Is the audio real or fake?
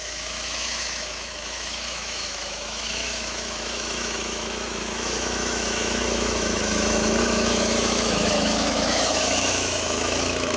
fake